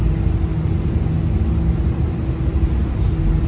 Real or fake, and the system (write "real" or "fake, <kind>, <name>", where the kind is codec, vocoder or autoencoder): real